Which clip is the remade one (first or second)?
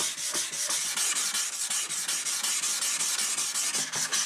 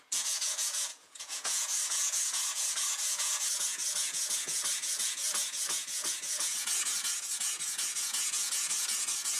second